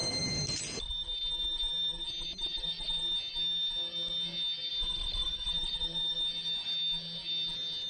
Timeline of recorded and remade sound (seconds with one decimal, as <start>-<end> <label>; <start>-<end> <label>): 0.0-7.9 recorded